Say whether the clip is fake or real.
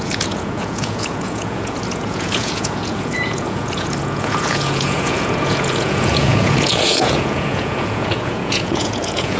fake